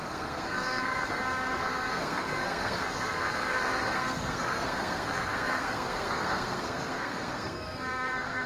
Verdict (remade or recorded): remade